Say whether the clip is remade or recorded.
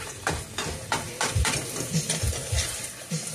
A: recorded